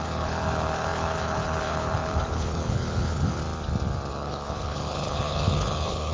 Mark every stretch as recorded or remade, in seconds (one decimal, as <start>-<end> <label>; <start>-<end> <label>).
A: 0.0-3.4 remade; 3.4-4.1 recorded; 4.1-6.1 remade